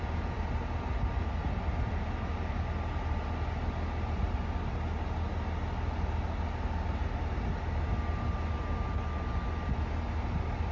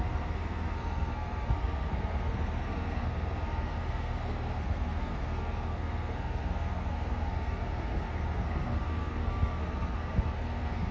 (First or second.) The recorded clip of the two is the first